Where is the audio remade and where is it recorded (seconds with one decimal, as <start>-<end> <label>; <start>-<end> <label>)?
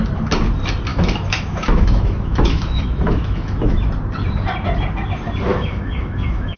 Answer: 0.0-0.9 recorded; 0.9-3.9 remade; 3.9-5.5 recorded; 5.5-6.6 remade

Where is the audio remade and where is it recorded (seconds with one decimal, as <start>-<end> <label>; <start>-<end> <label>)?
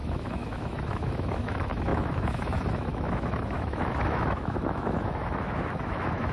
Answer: 0.0-6.3 remade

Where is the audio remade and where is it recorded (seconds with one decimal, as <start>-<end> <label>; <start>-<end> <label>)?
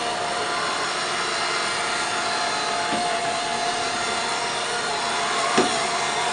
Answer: 0.0-6.3 recorded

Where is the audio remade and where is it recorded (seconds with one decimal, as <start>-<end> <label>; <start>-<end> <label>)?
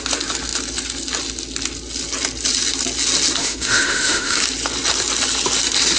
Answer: 0.0-3.4 recorded; 3.4-4.4 remade; 4.4-6.0 recorded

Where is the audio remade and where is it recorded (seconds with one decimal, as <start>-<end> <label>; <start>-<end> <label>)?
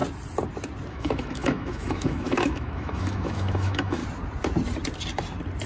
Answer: 0.0-0.9 recorded; 0.9-4.0 remade; 4.0-5.7 recorded